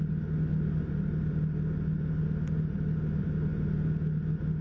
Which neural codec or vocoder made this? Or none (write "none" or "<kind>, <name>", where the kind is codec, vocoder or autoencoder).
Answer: none